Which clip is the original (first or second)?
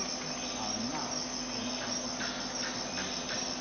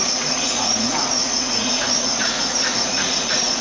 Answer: first